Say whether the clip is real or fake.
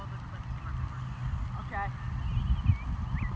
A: real